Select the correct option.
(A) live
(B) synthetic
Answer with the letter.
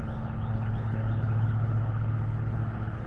B